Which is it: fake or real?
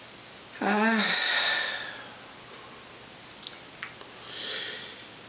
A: real